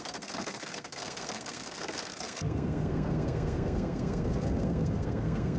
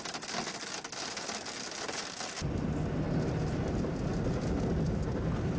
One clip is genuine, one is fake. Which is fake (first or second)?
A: first